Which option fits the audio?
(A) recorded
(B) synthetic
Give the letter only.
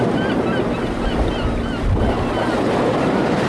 A